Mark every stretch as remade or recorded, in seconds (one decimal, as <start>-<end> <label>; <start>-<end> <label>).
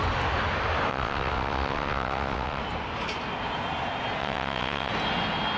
0.0-0.9 recorded; 0.9-2.6 remade; 2.6-4.2 recorded; 4.2-4.9 remade; 4.9-5.6 recorded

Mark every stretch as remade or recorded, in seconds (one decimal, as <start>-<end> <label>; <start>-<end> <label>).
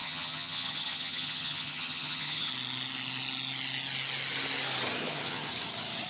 0.0-2.5 remade; 2.5-5.0 recorded; 5.0-5.5 remade; 5.5-6.1 recorded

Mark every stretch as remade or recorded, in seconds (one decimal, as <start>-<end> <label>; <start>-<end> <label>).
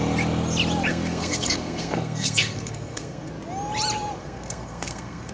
0.0-0.9 recorded; 0.9-3.3 remade; 3.3-4.2 recorded; 4.2-5.3 remade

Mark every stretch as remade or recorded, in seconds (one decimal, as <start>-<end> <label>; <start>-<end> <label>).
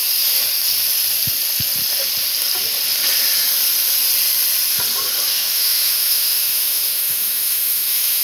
0.0-5.3 recorded; 5.3-8.2 remade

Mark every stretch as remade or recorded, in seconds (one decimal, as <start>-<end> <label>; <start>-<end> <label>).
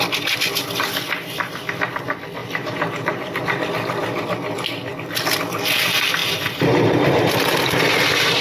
0.0-2.4 recorded; 2.4-3.4 remade; 3.4-6.2 recorded; 6.2-7.3 remade; 7.3-8.4 recorded